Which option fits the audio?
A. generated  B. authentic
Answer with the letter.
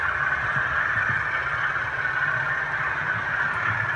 B